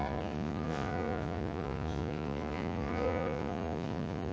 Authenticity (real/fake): fake